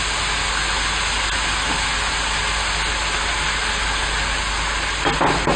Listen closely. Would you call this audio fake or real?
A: real